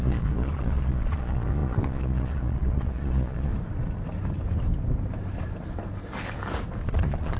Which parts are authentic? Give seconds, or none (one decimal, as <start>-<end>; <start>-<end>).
3.5-6.8